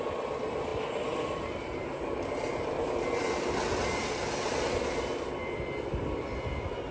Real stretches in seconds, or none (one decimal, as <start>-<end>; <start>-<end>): 0.0-6.9